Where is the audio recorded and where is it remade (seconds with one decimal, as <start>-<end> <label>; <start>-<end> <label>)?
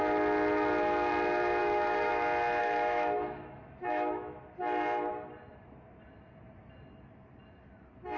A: 0.0-1.6 recorded; 1.6-2.1 remade; 2.1-2.6 recorded; 2.6-4.4 remade; 4.4-8.2 recorded